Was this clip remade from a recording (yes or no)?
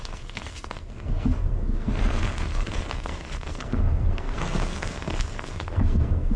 yes